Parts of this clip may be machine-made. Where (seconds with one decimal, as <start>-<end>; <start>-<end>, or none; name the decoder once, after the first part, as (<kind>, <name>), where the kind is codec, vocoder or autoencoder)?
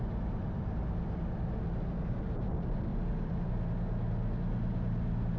2.9-3.5 (vocoder, BigVGAN v2)